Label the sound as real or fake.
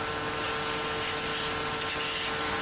real